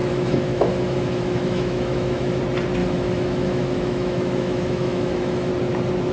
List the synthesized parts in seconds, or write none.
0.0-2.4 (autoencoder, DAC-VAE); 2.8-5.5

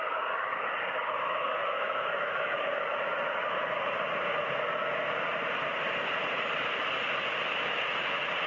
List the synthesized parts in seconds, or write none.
1.0-3.1 (autoencoder, DAC-VAE)

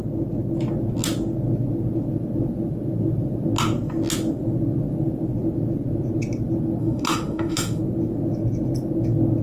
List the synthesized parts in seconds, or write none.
6.8-7.8 (autoencoder, DAC-VAE)